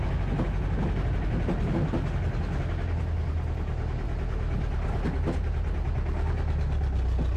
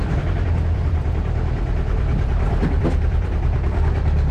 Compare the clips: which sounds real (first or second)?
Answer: first